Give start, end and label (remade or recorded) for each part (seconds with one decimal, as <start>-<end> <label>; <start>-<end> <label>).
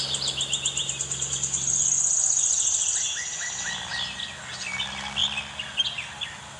0.0-6.6 recorded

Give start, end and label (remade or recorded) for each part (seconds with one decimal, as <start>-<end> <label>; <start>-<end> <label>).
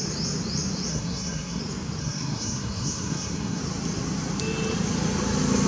0.0-0.9 recorded; 0.9-1.6 remade; 1.6-2.0 recorded; 2.0-3.6 remade; 3.6-5.7 recorded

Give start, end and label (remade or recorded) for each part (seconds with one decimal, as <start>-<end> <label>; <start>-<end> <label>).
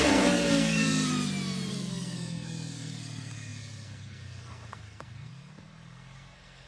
0.0-1.1 remade; 1.1-1.7 recorded; 1.7-6.7 remade